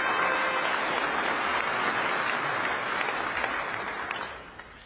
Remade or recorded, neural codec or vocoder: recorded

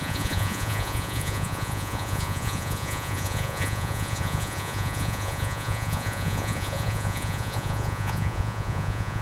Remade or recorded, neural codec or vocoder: remade, vocoder, Vocos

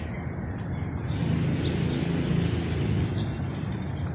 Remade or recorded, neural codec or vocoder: recorded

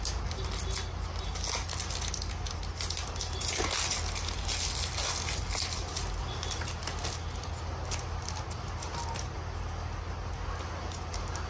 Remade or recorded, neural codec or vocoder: recorded